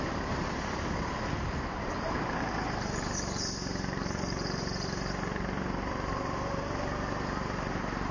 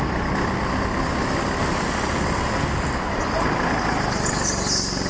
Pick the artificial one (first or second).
first